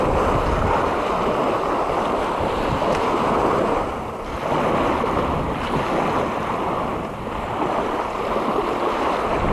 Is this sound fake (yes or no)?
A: no